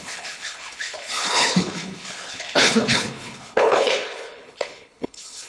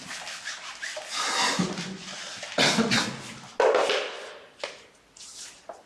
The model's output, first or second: first